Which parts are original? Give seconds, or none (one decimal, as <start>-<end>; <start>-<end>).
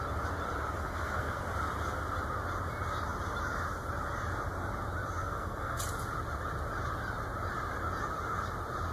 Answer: 0.0-0.8; 1.4-5.2; 5.8-8.9